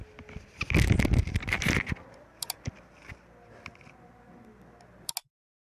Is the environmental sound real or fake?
real